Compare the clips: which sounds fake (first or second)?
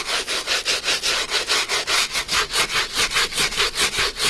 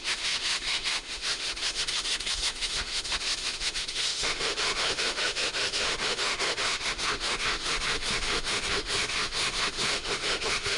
second